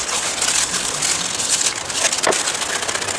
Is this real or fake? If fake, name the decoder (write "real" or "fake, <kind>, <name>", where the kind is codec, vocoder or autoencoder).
real